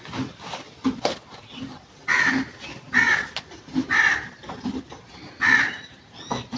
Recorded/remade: recorded